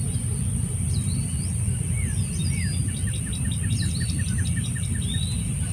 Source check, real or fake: real